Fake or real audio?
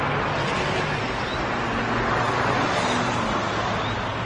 real